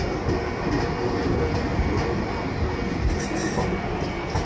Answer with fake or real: real